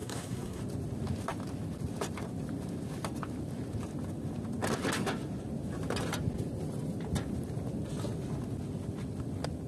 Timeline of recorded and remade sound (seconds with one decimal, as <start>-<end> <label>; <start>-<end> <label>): 0.0-0.6 remade; 0.6-9.7 recorded